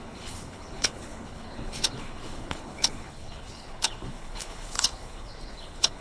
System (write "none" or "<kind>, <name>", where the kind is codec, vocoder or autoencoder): codec, HILCodec